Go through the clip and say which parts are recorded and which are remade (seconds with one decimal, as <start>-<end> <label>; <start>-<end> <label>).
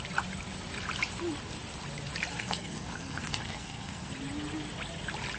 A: 0.0-2.3 recorded; 2.3-4.1 remade; 4.1-5.4 recorded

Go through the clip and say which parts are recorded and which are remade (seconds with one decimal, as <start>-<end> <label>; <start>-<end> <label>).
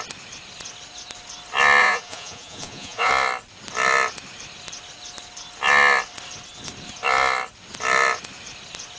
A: 0.0-1.8 recorded; 1.8-3.1 remade; 3.1-9.0 recorded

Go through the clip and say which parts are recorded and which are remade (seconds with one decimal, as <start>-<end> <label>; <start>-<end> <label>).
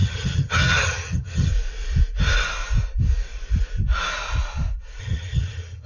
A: 0.0-1.5 remade; 1.5-5.0 recorded; 5.0-5.9 remade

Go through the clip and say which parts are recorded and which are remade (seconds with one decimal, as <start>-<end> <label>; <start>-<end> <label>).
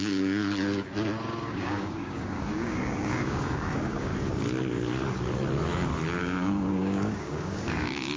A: 0.0-0.5 remade; 0.5-1.4 recorded; 1.4-4.1 remade; 4.1-6.2 recorded; 6.2-8.2 remade